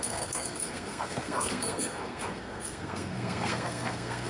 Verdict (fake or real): fake